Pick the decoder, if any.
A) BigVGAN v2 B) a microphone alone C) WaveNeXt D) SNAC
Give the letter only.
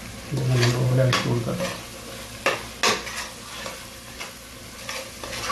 B